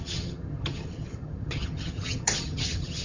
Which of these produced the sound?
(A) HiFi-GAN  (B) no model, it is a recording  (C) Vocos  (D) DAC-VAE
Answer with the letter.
A